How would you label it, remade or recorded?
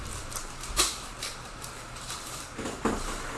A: remade